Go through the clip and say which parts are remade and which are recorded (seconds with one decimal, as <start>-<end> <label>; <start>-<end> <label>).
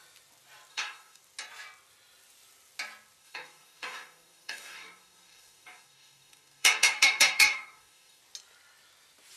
0.0-0.7 recorded; 0.7-1.2 remade; 1.2-3.2 recorded; 3.2-8.2 remade; 8.2-9.4 recorded